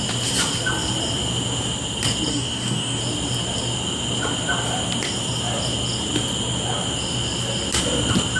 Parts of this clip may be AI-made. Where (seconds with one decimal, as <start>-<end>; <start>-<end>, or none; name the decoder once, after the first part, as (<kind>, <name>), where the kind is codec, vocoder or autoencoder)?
2.3-3.0 (codec, DAC)